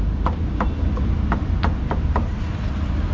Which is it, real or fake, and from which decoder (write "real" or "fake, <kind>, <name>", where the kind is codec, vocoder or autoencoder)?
real